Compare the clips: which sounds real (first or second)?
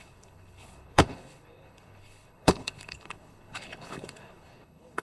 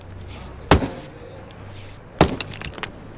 second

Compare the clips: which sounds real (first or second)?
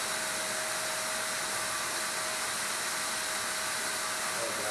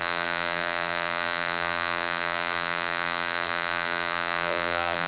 first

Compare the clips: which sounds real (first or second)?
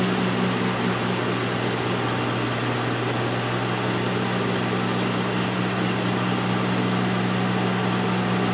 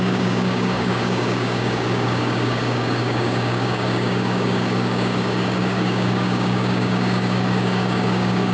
first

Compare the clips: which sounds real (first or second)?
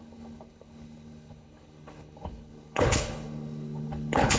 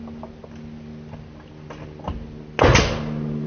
second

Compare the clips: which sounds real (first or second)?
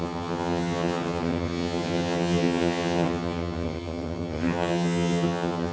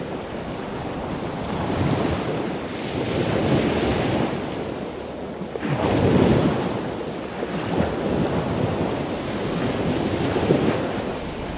second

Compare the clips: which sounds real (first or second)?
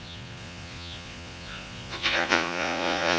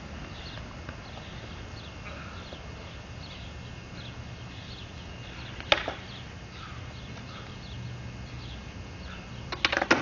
second